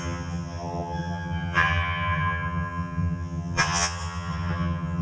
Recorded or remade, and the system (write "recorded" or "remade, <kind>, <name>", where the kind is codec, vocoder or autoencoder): remade, vocoder, HiFi-GAN